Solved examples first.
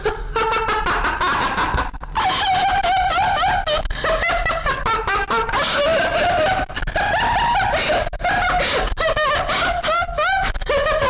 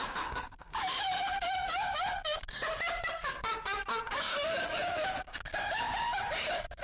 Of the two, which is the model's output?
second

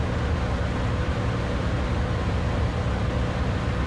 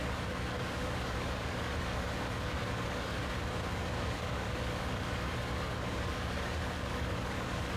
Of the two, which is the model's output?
second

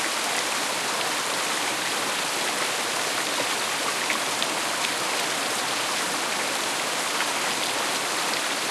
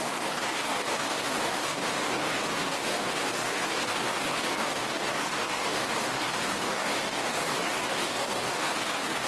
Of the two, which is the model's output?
second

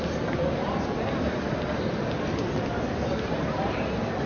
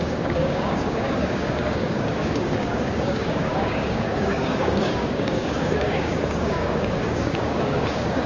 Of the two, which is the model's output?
second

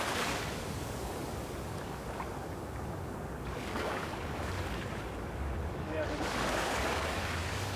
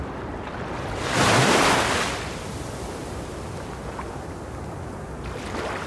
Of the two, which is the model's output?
first